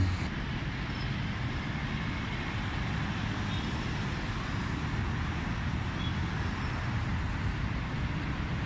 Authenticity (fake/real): real